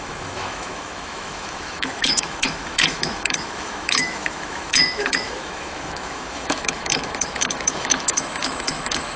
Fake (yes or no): yes